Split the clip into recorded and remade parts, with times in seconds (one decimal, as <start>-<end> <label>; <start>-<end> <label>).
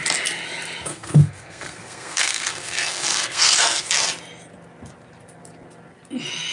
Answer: 0.0-0.9 recorded; 0.9-3.9 remade; 3.9-6.5 recorded